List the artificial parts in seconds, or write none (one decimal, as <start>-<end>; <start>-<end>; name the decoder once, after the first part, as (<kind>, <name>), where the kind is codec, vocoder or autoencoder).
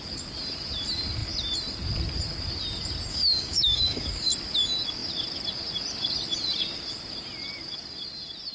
3.1-4.3 (codec, DAC)